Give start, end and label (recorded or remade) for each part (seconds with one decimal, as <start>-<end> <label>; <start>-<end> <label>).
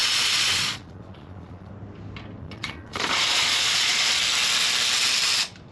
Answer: 0.0-1.7 remade; 1.7-2.4 recorded; 2.4-4.2 remade; 4.2-5.7 recorded